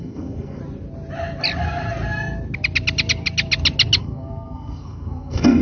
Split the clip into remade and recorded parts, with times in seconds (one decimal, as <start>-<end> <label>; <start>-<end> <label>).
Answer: 0.0-0.6 remade; 0.6-4.0 recorded; 4.0-5.6 remade